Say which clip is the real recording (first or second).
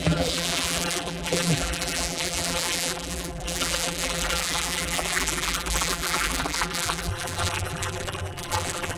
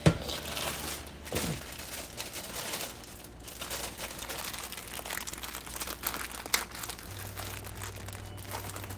second